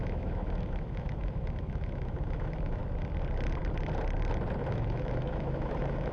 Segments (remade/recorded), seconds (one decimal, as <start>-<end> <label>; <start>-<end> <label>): 0.0-2.8 remade; 2.8-4.6 recorded; 4.6-6.1 remade